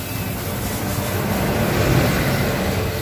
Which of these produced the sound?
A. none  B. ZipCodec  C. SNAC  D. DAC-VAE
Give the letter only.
A